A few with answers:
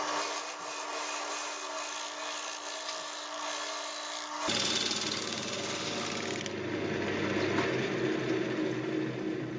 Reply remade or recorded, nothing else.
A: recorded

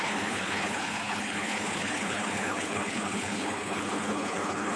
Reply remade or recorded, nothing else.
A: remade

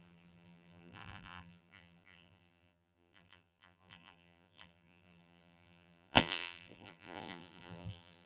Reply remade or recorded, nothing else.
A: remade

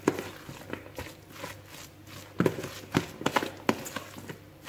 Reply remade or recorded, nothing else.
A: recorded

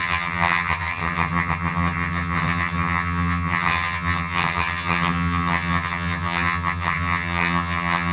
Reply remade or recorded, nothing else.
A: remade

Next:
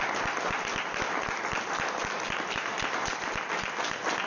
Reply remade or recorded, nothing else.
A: recorded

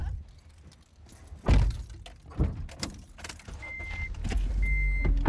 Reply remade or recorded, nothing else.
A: recorded